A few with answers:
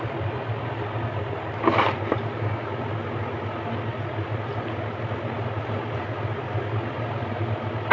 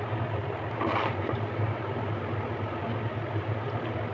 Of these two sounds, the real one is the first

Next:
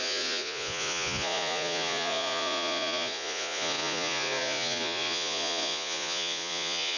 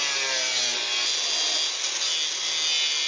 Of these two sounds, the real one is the second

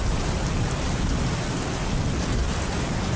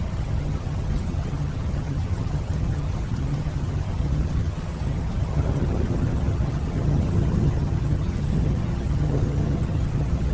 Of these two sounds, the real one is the first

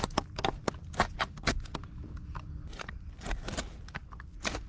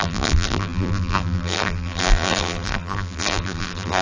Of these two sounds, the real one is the first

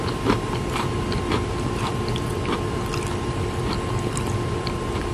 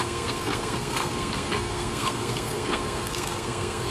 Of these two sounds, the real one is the first